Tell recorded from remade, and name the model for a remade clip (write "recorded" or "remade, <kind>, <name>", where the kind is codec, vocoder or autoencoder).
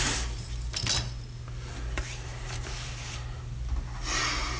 recorded